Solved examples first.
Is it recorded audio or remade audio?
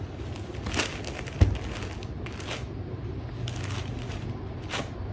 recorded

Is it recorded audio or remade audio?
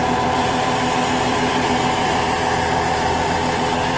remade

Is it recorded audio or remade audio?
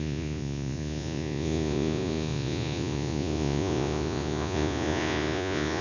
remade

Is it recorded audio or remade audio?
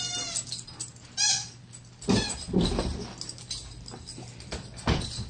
recorded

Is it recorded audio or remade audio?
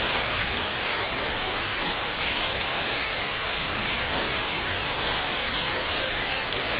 remade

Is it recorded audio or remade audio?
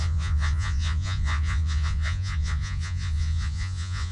remade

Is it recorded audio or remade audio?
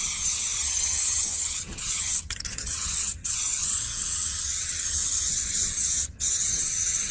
remade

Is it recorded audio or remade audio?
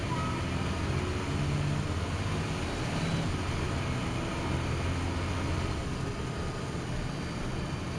recorded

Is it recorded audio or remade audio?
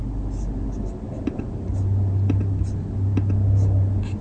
recorded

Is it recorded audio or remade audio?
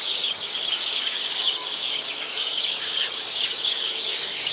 remade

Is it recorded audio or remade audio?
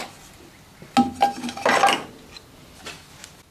recorded